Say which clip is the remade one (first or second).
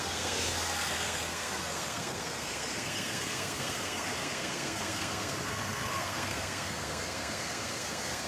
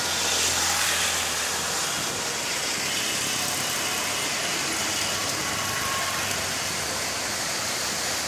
first